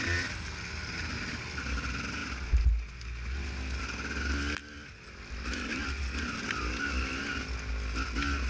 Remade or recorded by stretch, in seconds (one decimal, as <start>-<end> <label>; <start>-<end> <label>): 0.0-8.5 recorded